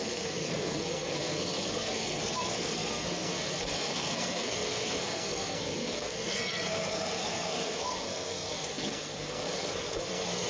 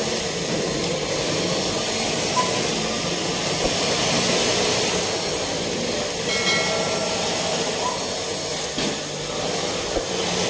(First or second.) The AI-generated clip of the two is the first